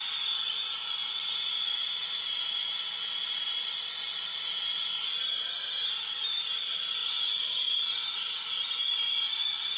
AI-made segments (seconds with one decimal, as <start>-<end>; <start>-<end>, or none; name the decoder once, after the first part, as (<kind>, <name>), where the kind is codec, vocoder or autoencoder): 1.0-3.1 (vocoder, Vocos); 7.0-7.7